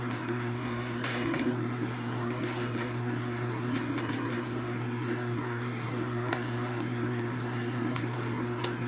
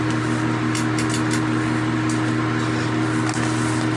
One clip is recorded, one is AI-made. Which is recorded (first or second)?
second